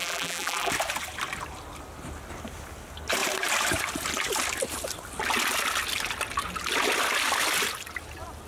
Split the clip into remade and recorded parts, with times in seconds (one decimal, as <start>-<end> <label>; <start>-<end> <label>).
0.0-0.7 remade; 0.7-8.5 recorded